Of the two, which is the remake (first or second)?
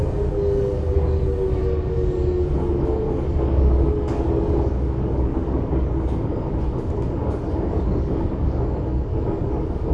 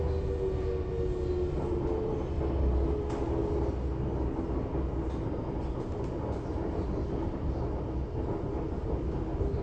first